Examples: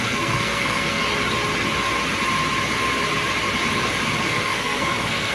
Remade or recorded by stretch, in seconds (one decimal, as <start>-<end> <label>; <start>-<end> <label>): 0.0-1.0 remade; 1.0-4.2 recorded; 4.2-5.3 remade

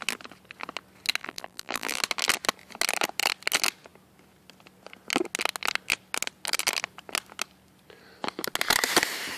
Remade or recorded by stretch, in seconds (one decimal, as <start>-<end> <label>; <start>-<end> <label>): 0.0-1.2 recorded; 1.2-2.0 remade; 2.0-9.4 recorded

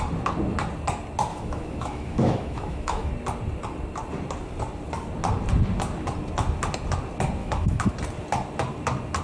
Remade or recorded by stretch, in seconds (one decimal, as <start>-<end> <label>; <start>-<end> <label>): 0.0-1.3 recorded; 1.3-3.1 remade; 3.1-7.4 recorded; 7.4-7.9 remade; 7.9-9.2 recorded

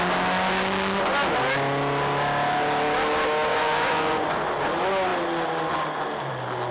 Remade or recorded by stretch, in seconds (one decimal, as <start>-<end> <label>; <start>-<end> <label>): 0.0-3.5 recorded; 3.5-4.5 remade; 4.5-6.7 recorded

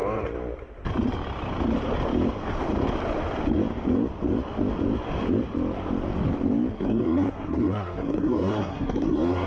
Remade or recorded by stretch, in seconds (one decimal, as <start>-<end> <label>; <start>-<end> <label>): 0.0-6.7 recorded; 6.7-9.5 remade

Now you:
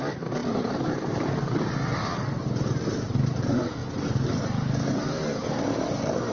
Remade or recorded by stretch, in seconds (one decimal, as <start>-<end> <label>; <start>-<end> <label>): 0.0-3.8 remade; 3.8-4.4 recorded; 4.4-6.3 remade

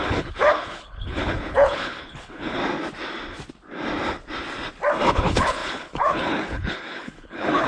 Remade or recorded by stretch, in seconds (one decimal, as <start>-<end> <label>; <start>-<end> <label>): 0.0-2.6 remade; 2.6-5.1 recorded; 5.1-7.7 remade